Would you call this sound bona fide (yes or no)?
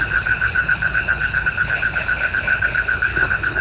no